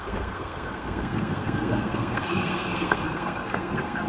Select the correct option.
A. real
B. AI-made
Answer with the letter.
B